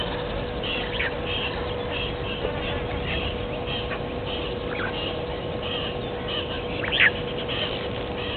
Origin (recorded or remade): recorded